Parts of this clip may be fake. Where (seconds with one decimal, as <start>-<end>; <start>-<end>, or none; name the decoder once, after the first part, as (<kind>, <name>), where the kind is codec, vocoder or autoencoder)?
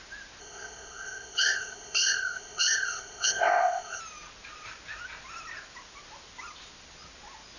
0.4-4.0 (codec, ZipCodec)